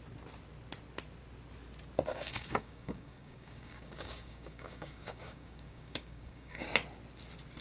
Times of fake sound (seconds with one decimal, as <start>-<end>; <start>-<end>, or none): 2.1-6.7